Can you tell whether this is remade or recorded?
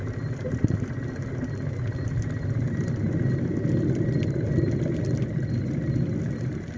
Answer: recorded